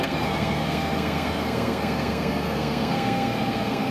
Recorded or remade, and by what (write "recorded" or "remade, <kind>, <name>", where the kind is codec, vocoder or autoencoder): remade, codec, SNAC